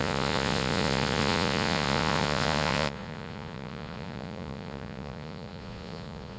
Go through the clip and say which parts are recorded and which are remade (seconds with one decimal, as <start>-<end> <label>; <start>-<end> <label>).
0.0-6.4 remade